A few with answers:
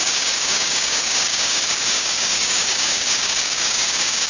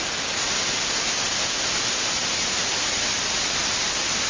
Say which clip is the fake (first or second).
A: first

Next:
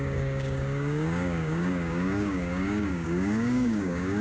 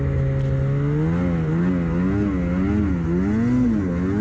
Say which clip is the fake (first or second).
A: first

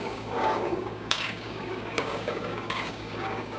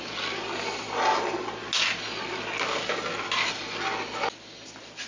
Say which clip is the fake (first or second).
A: first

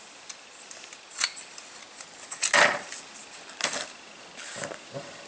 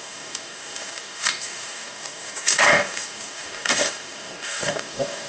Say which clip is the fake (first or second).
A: second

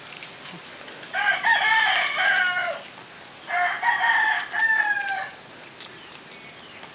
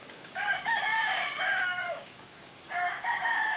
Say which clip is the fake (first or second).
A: second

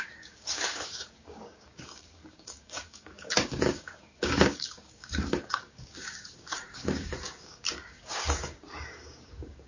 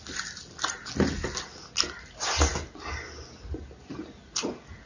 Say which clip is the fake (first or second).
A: first